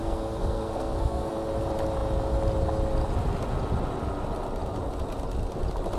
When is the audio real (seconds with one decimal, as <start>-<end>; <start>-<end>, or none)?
1.3-6.0